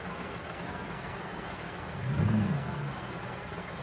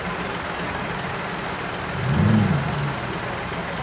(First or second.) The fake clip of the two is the first